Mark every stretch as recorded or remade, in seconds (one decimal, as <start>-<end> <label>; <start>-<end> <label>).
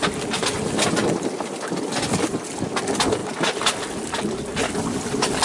0.0-5.4 recorded